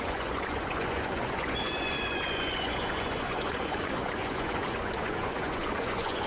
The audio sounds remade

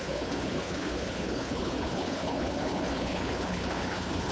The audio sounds remade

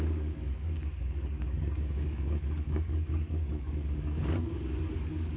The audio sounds remade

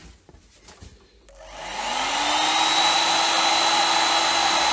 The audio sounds recorded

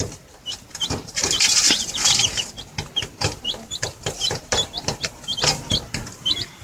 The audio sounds recorded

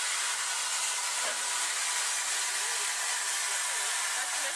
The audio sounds recorded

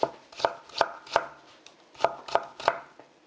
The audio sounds recorded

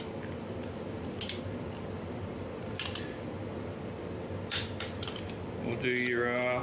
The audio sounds recorded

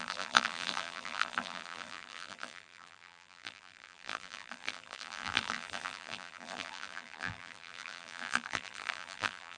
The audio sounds remade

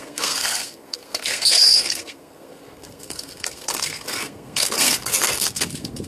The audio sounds remade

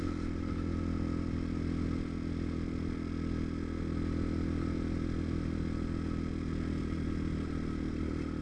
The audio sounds recorded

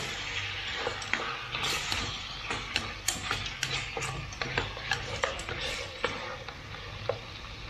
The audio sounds recorded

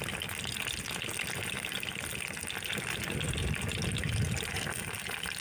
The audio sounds recorded